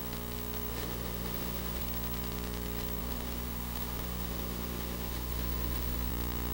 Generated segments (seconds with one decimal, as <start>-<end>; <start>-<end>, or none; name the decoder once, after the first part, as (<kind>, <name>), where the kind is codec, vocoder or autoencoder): 0.7-1.8 (autoencoder, DAC-VAE); 3.0-6.1